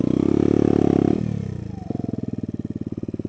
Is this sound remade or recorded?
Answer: recorded